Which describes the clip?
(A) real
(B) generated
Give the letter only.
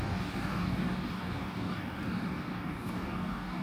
B